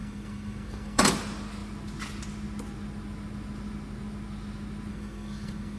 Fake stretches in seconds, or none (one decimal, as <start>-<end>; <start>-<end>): 0.0-1.1; 4.9-5.8